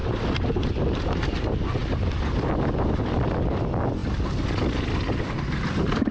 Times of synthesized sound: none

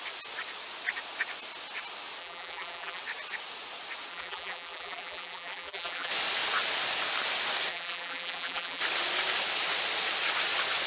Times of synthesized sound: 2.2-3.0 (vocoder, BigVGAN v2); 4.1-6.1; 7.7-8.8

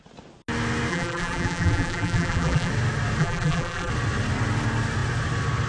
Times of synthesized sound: 0.9-2.7 (vocoder, BigVGAN v2); 3.2-3.9